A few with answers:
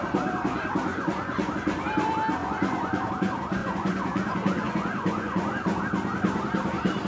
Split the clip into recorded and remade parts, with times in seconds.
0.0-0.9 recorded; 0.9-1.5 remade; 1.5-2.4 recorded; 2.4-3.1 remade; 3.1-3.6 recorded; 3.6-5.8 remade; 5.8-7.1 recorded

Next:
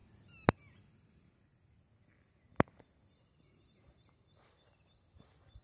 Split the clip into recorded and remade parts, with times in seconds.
0.0-5.6 recorded

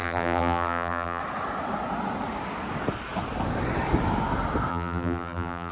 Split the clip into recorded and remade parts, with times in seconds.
0.0-1.2 remade; 1.2-4.7 recorded; 4.7-5.7 remade

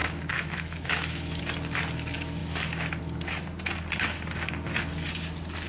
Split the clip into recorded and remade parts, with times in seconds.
0.0-1.4 remade; 1.4-2.4 recorded; 2.4-3.0 remade; 3.0-5.7 recorded

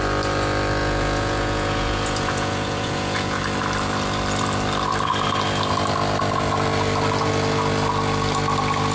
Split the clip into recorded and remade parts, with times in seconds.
0.0-0.8 recorded; 0.8-3.4 remade; 3.4-8.9 recorded

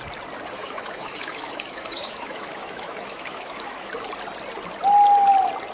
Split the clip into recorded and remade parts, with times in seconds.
0.0-0.6 recorded; 0.6-3.9 remade; 3.9-5.7 recorded

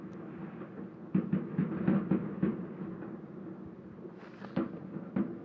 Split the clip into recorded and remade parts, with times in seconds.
0.0-0.4 remade; 0.4-1.1 recorded; 1.1-1.6 remade; 1.6-2.1 recorded; 2.1-2.5 remade; 2.5-5.4 recorded

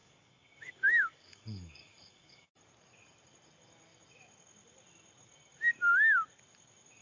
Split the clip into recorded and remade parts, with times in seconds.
0.0-2.6 remade; 2.6-7.0 recorded